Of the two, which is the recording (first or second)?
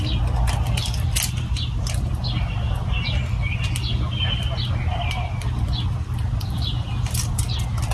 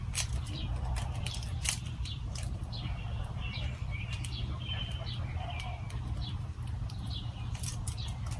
first